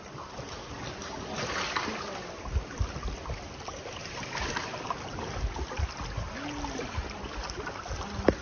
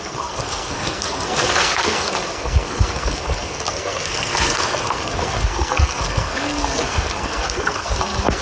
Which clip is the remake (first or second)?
second